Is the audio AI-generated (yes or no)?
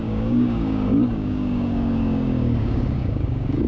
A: yes